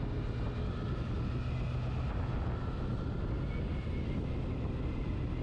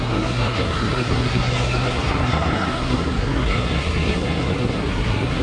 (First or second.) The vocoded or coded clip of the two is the second